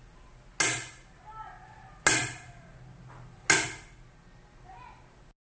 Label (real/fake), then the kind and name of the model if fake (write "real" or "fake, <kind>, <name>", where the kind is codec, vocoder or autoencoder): real